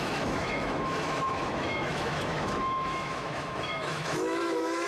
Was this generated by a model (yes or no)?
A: yes